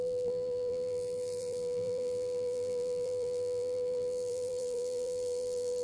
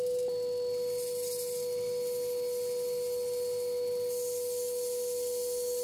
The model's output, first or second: first